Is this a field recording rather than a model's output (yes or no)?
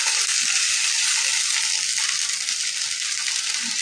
yes